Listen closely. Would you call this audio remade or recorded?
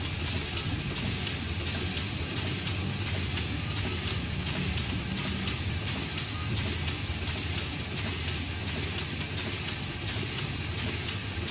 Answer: recorded